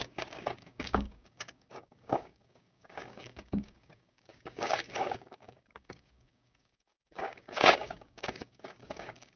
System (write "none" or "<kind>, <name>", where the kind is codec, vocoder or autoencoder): codec, DAC